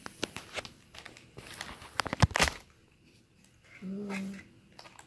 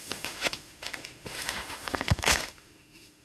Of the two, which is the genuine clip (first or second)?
first